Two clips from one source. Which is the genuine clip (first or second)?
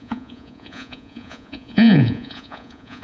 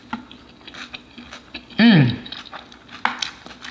second